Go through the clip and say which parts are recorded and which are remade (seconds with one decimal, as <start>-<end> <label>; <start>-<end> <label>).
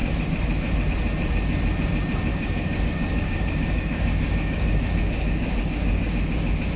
0.0-2.3 recorded; 2.3-6.1 remade; 6.1-6.8 recorded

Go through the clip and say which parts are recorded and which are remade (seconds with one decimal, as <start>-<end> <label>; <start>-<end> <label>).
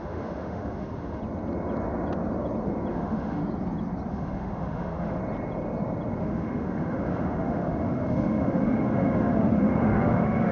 0.0-1.2 remade; 1.2-2.9 recorded; 2.9-3.4 remade; 3.4-4.1 recorded; 4.1-5.2 remade; 5.2-6.2 recorded; 6.2-10.5 remade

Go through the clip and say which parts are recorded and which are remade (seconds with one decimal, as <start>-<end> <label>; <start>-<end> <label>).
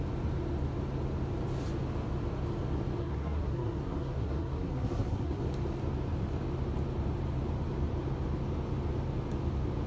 0.0-3.0 recorded; 3.0-5.4 remade; 5.4-9.9 recorded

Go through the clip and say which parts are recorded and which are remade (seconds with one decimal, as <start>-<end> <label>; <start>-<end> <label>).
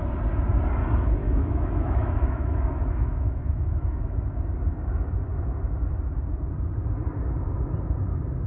0.0-1.2 recorded; 1.2-4.4 remade; 4.4-8.5 recorded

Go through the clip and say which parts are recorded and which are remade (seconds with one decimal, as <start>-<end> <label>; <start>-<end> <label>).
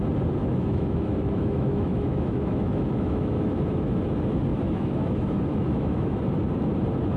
0.0-0.4 recorded; 0.4-4.0 remade; 4.0-4.5 recorded; 4.5-6.2 remade; 6.2-7.2 recorded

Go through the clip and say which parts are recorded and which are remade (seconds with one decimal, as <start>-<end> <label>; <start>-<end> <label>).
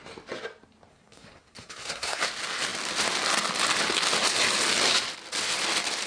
0.0-0.9 recorded; 0.9-2.2 remade; 2.2-6.1 recorded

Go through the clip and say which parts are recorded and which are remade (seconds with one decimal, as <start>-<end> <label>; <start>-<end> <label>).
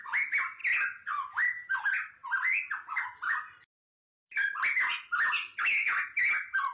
0.0-6.7 recorded